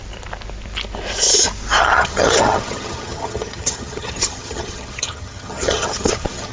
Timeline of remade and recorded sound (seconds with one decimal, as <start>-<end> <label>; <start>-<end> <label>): 0.0-1.8 recorded; 1.8-6.5 remade

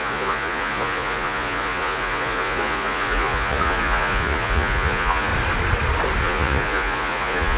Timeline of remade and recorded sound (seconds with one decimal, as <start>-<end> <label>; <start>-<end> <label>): 0.0-5.3 remade; 5.3-6.2 recorded; 6.2-7.6 remade

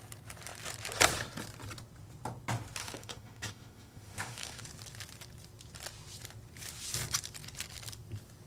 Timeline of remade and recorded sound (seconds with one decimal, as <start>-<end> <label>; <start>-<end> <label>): 0.0-2.8 recorded; 2.8-4.6 remade; 4.6-8.5 recorded

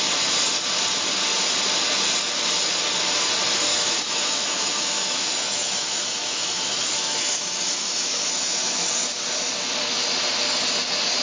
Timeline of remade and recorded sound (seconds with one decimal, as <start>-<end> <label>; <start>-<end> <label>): 0.0-3.7 recorded; 3.7-8.9 remade; 8.9-11.2 recorded